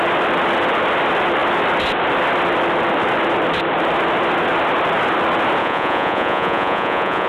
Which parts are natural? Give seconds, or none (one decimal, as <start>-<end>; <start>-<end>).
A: 0.0-5.6